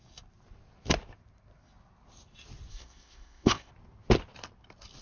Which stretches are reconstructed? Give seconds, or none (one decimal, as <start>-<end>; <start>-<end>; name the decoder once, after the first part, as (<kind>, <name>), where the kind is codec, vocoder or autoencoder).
2.7-3.7 (codec, ZipCodec)